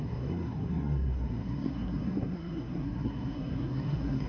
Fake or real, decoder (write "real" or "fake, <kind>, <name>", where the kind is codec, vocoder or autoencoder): fake, codec, SNAC